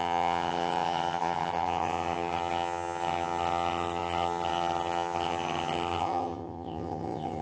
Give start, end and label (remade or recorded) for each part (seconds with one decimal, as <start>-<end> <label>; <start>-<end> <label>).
0.0-7.4 remade